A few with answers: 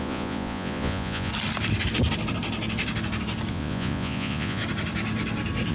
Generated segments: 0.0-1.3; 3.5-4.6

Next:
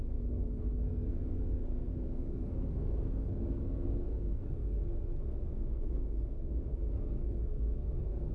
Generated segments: 0.0-4.8; 5.5-8.3

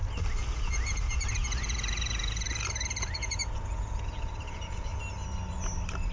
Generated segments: 0.5-4.9

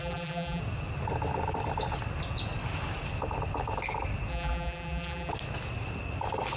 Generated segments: 0.0-0.6; 4.3-5.3

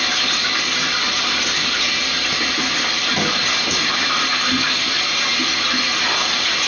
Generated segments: none

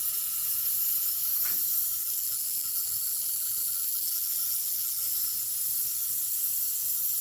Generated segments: 2.0-5.0